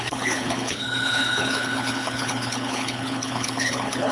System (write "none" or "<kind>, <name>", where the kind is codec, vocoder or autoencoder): codec, HILCodec